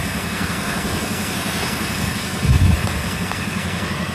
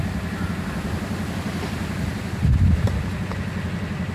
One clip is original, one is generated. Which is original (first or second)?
second